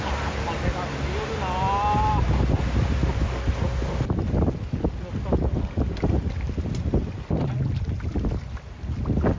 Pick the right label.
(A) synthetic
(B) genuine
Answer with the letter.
B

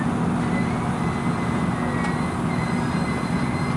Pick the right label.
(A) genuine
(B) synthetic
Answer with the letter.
A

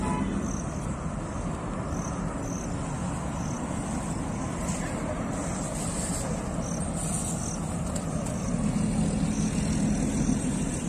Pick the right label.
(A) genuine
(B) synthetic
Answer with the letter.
A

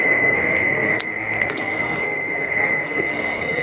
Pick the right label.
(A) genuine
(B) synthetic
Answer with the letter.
B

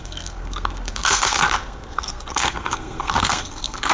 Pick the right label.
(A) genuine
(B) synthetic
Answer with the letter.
B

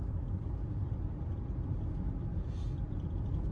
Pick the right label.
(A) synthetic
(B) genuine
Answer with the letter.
B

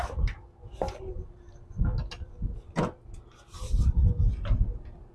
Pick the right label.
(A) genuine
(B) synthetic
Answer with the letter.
A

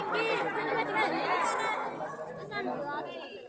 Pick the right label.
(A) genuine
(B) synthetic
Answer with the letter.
A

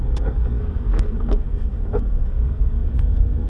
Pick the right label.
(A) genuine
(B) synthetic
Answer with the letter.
B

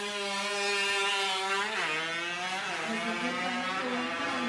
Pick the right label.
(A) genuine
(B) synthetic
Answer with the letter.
A